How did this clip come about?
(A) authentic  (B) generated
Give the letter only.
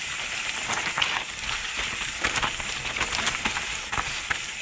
A